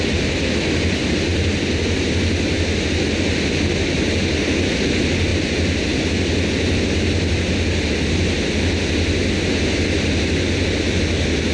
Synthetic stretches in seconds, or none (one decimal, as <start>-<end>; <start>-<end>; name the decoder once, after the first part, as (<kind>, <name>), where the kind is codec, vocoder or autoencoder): none